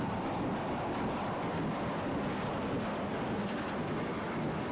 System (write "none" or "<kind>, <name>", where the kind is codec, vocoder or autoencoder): none